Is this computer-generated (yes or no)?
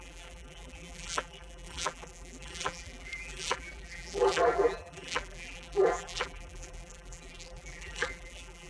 yes